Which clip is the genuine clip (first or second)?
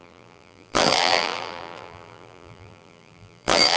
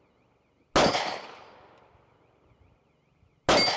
second